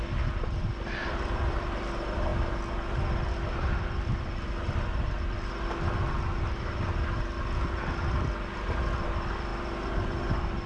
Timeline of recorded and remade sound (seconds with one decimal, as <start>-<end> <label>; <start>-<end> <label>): 0.0-1.0 recorded; 1.0-1.9 remade; 1.9-9.5 recorded; 9.5-10.7 remade

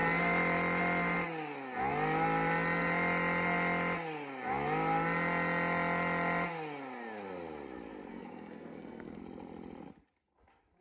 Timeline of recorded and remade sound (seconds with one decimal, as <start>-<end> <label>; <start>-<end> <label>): 0.0-8.1 recorded; 8.1-9.2 remade; 9.2-10.8 recorded

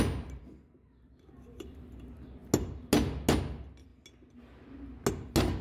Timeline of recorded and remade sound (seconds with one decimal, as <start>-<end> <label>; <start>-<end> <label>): 0.0-5.6 recorded